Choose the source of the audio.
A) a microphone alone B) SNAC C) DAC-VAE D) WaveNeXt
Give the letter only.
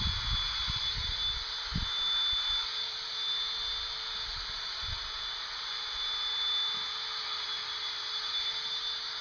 A